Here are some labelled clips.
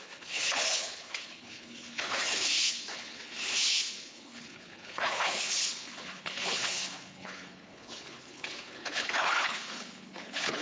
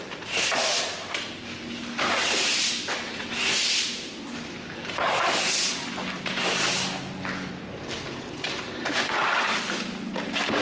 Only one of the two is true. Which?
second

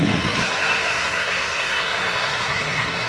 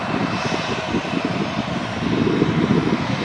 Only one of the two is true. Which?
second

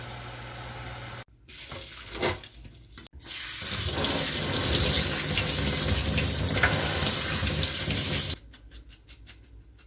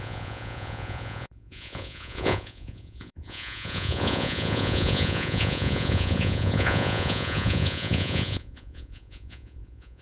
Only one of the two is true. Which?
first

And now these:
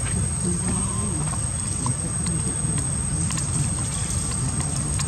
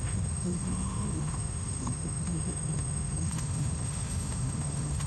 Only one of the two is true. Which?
first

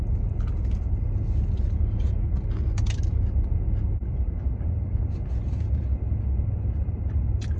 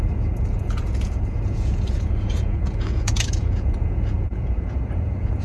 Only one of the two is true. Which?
first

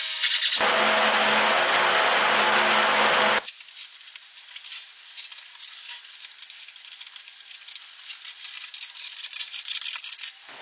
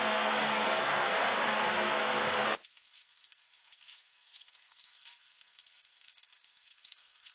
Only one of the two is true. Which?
first